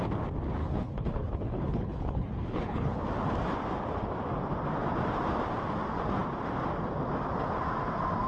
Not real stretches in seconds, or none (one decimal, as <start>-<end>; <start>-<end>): 0.6-3.0